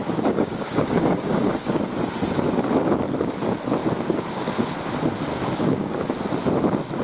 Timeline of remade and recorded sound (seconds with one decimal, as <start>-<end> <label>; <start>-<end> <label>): 0.0-2.0 remade; 2.0-3.8 recorded; 3.8-4.5 remade; 4.5-5.3 recorded; 5.3-6.1 remade; 6.1-7.0 recorded